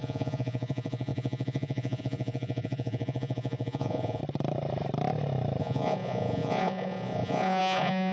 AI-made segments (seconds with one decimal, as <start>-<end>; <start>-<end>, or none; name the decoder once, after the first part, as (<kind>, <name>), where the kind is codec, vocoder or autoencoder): 0.0-4.2 (vocoder, Vocos); 5.6-8.1